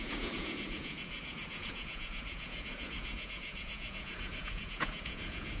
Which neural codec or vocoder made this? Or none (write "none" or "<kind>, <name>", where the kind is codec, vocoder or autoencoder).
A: vocoder, Vocos